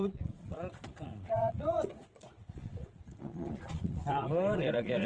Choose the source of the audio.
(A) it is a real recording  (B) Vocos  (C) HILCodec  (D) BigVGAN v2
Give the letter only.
B